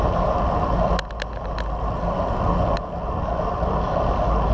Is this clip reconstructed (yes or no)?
no